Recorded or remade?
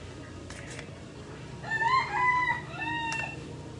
recorded